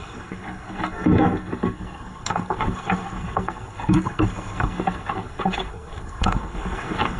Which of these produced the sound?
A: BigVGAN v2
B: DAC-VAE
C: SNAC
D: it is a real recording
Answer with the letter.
C